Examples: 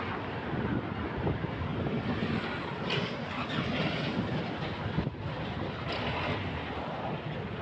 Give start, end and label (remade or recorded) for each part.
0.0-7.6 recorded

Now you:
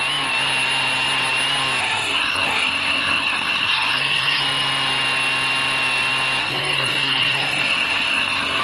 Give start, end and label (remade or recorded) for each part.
0.0-1.8 recorded; 1.8-4.4 remade; 4.4-6.4 recorded; 6.4-8.6 remade

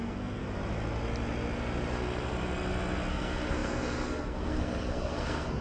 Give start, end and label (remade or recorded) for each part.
0.0-0.4 remade; 0.4-3.1 recorded; 3.1-5.6 remade

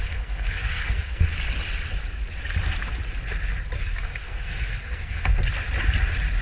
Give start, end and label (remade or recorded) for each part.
0.0-1.3 remade; 1.3-3.8 recorded; 3.8-5.3 remade; 5.3-6.4 recorded